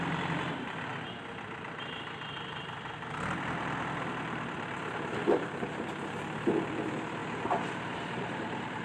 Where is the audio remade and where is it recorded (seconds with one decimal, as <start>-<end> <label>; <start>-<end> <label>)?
0.0-0.9 remade; 0.9-1.4 recorded; 1.4-8.8 remade